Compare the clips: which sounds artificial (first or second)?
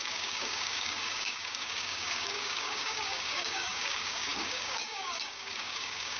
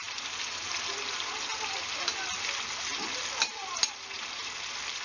first